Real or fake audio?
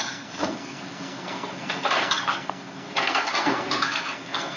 fake